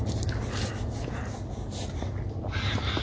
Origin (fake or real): real